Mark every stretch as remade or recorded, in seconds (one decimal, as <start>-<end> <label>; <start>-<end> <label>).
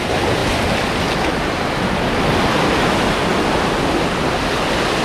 0.0-5.0 recorded